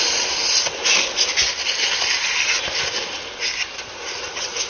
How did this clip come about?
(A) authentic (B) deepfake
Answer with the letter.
A